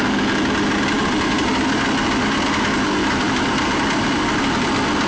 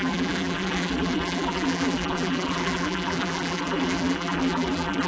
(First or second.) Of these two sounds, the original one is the first